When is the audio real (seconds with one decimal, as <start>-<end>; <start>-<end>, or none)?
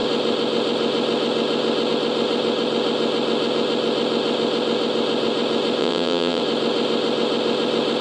0.0-5.8; 6.4-8.0